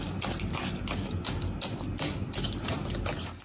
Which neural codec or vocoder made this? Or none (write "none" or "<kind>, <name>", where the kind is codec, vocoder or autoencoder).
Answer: none